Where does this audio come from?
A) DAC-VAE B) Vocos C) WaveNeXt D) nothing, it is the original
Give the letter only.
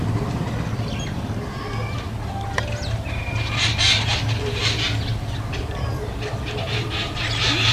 D